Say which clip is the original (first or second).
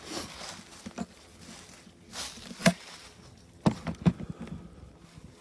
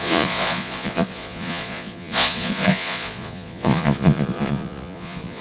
first